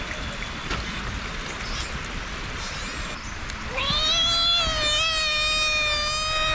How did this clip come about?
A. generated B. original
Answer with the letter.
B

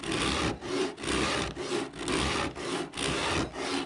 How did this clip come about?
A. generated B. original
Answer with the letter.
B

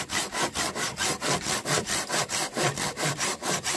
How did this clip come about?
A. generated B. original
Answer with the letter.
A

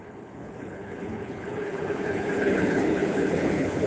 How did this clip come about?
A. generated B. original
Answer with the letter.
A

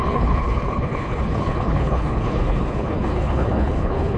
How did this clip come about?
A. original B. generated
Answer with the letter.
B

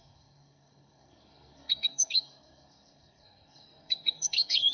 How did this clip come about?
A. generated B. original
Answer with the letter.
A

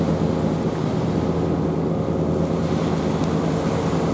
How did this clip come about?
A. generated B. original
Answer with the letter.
B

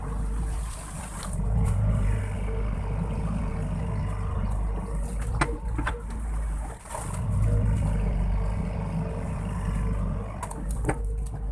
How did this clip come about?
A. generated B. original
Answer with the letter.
B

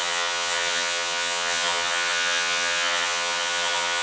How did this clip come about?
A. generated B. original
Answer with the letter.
A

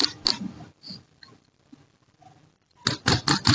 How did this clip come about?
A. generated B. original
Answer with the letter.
B